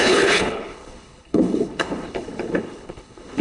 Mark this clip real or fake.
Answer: fake